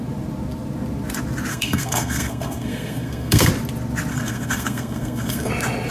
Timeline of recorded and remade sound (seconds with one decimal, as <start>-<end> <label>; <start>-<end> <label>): 0.0-1.5 recorded; 1.5-3.5 remade; 3.5-4.1 recorded; 4.1-5.5 remade; 5.5-5.9 recorded